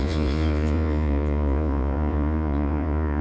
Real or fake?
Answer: fake